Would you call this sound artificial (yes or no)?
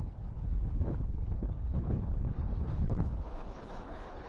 yes